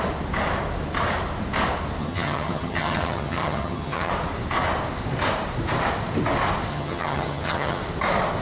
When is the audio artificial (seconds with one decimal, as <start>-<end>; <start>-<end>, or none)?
2.0-4.1; 6.7-7.8